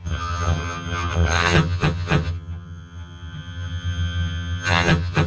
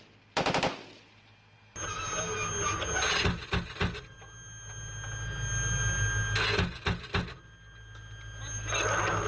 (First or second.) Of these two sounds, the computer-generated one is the first